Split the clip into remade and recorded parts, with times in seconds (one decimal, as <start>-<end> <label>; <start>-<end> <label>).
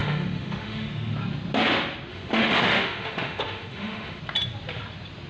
0.0-1.1 remade; 1.1-2.1 recorded; 2.1-4.2 remade; 4.2-5.3 recorded